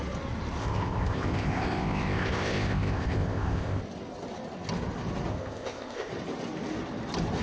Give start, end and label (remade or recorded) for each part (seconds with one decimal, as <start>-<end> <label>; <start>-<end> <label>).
0.0-0.6 recorded; 0.6-3.8 remade; 3.8-5.3 recorded; 5.3-6.1 remade; 6.1-7.4 recorded

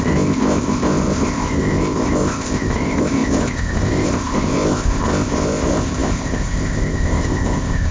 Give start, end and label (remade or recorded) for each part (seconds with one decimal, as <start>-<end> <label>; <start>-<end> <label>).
0.0-7.9 remade

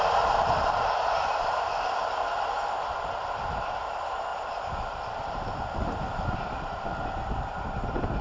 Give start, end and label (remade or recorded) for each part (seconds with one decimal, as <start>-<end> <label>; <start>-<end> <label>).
0.0-8.2 recorded

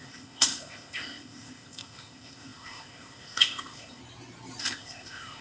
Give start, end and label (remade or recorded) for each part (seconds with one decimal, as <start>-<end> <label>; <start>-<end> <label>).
0.0-4.0 remade; 4.0-4.6 recorded; 4.6-5.4 remade

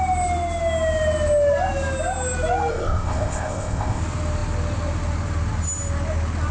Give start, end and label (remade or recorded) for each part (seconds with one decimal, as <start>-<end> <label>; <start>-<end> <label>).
0.0-2.7 recorded; 2.7-4.0 remade; 4.0-6.5 recorded